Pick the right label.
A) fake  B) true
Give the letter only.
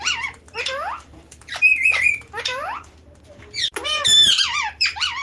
A